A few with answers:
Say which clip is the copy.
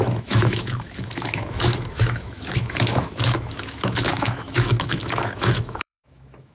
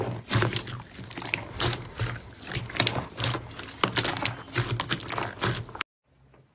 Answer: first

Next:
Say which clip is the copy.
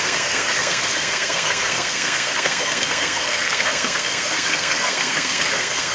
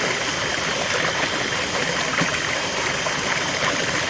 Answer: first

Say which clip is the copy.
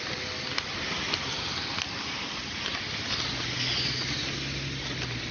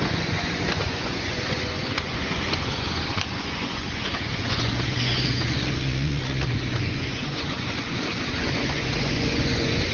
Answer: second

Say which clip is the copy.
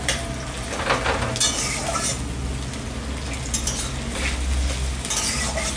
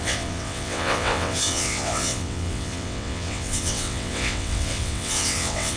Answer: second